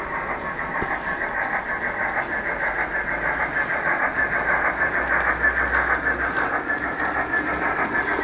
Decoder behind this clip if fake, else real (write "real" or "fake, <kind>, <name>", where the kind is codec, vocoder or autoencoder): real